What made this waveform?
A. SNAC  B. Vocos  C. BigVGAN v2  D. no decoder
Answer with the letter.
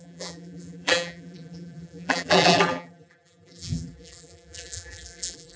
C